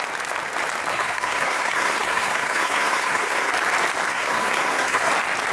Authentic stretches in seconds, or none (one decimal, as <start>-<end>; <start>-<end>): 0.0-0.9; 3.5-4.1; 5.1-5.5

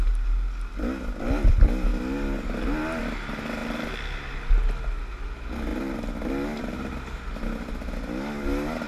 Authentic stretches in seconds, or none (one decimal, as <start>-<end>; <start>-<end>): 0.0-8.9

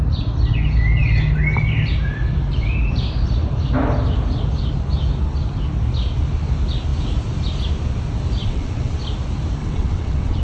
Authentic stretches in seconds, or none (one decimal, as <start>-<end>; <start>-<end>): 0.0-8.4; 9.0-9.6

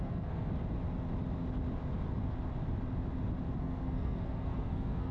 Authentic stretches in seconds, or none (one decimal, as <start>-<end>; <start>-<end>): 0.5-3.6

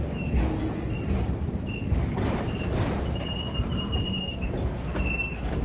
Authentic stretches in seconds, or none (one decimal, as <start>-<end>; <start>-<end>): 0.0-2.1; 4.2-5.6

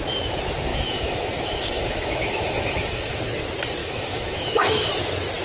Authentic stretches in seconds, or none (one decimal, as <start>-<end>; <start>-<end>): 0.0-0.7; 3.2-3.8; 4.9-5.4

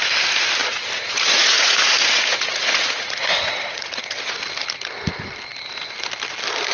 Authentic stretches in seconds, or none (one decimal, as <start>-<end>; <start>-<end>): 0.0-0.6; 4.5-6.7